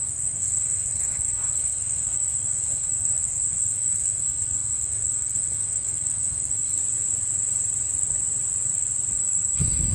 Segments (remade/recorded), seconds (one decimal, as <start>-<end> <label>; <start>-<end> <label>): 0.0-6.8 remade; 6.8-9.2 recorded; 9.2-9.9 remade